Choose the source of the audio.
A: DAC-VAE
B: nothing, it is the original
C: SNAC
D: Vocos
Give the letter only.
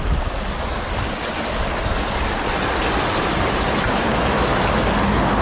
B